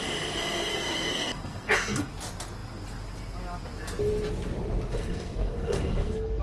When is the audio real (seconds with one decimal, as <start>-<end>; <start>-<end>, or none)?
0.0-0.7; 2.1-4.9